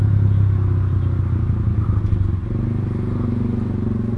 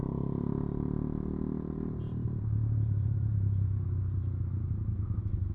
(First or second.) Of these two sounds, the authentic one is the first